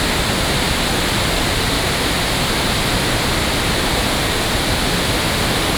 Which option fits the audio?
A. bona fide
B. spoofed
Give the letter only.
A